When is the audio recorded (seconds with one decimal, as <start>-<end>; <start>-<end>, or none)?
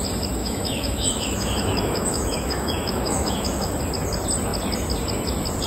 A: 0.0-0.4; 3.8-5.7